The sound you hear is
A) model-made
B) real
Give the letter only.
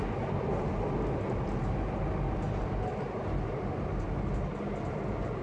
B